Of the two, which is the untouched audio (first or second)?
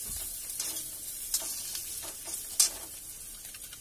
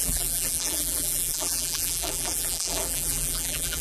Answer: first